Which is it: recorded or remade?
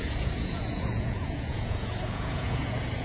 remade